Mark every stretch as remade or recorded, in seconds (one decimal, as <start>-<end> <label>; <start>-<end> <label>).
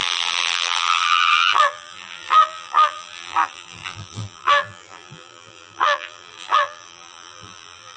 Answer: 0.0-8.0 remade